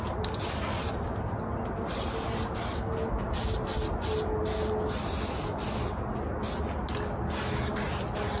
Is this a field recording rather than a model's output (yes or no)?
yes